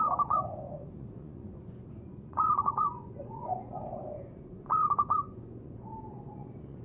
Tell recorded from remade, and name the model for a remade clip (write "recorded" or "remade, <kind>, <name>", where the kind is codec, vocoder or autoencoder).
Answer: remade, vocoder, Vocos